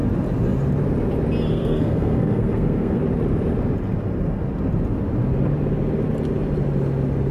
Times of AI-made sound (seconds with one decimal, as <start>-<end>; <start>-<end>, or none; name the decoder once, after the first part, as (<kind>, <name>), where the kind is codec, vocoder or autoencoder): 1.5-3.0 (codec, SNAC)